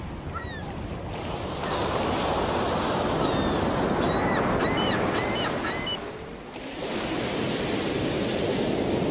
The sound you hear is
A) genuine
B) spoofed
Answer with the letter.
A